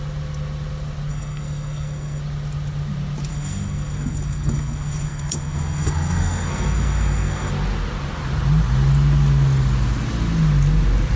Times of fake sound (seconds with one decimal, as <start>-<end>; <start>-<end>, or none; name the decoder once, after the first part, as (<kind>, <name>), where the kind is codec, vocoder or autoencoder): 1.1-2.2 (codec, SNAC); 3.3-7.5